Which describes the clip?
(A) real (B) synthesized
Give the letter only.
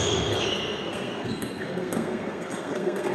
B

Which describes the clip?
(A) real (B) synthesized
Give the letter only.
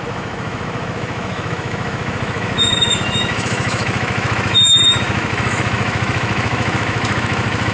B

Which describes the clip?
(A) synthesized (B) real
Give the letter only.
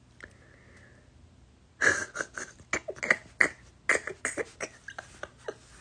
B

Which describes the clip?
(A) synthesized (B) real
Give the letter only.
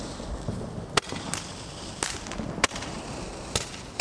B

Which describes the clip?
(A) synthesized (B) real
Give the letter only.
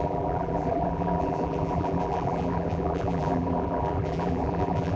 A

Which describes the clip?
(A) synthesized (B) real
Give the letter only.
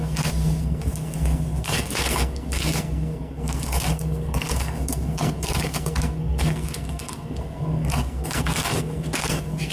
A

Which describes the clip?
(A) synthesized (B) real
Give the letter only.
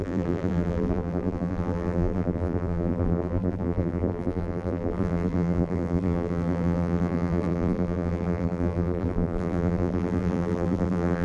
A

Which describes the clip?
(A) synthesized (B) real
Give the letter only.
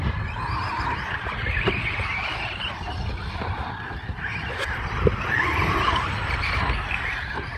B